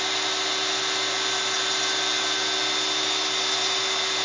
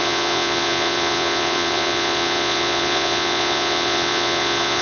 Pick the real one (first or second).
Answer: first